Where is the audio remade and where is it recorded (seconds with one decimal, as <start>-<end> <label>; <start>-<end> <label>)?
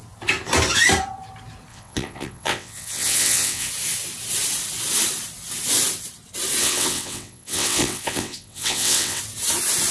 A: 0.0-1.7 recorded; 1.7-3.7 remade; 3.7-6.6 recorded; 6.6-9.2 remade; 9.2-9.9 recorded